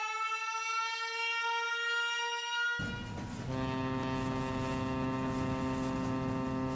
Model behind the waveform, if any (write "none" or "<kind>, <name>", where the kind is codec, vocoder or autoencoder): none